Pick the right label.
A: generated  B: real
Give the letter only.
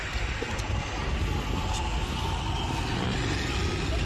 B